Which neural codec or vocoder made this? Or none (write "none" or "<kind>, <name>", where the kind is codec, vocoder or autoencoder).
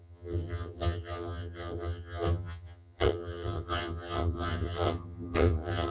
vocoder, HiFi-GAN